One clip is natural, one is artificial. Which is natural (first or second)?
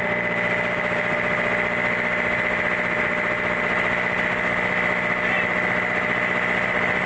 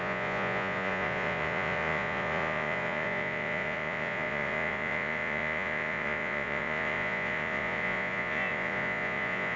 first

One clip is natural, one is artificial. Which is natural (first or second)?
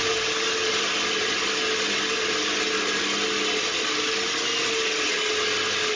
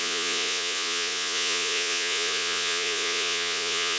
first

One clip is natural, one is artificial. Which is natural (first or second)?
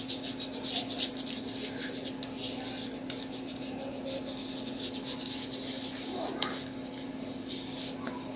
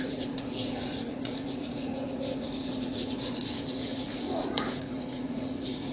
first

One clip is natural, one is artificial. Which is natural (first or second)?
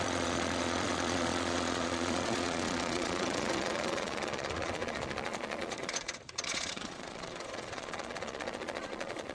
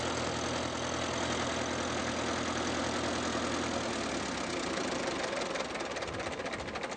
second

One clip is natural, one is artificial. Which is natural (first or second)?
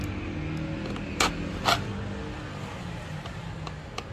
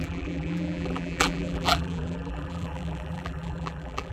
first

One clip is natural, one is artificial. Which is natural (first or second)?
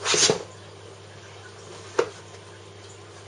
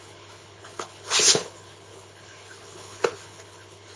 first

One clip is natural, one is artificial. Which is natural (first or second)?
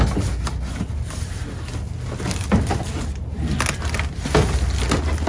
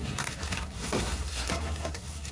first